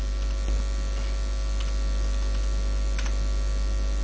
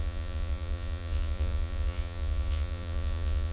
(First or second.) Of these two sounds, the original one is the first